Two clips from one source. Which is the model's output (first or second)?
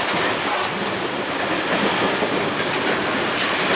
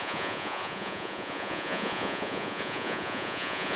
second